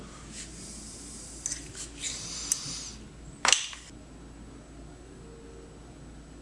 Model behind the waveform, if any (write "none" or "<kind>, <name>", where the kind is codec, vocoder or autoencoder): none